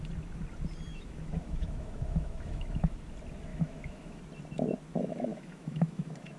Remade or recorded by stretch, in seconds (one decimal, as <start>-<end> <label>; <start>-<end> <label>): 0.0-0.9 recorded; 0.9-3.0 remade; 3.0-3.5 recorded; 3.5-4.2 remade; 4.2-4.9 recorded; 4.9-6.4 remade

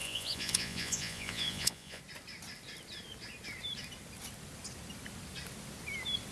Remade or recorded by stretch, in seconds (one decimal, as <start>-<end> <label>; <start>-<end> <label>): 0.0-2.0 remade; 2.0-6.3 recorded

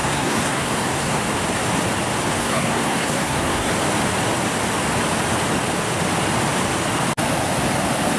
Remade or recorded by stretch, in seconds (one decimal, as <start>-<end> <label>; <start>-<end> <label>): 0.0-1.2 remade; 1.2-2.4 recorded; 2.4-3.7 remade; 3.7-8.2 recorded

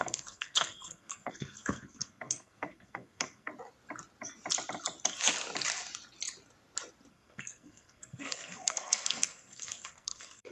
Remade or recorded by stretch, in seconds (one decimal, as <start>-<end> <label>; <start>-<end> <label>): 0.0-3.5 remade; 3.5-7.1 recorded; 7.1-10.5 remade

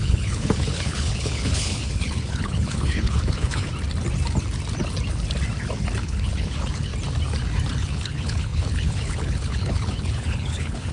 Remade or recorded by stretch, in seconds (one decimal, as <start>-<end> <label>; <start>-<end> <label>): 0.0-3.7 remade; 3.7-6.0 recorded; 6.0-6.9 remade; 6.9-7.8 recorded; 7.8-10.9 remade

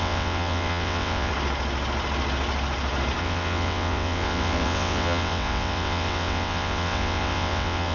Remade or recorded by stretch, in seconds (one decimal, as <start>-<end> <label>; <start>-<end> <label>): 0.0-1.3 remade; 1.3-3.2 recorded; 3.2-7.9 remade

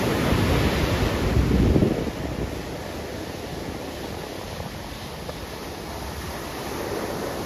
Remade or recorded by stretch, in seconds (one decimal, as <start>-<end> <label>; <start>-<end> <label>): 0.0-7.5 recorded

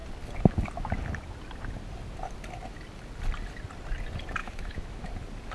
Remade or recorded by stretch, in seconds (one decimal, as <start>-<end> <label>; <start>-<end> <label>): 0.0-4.4 recorded; 4.4-5.1 remade; 5.1-5.5 recorded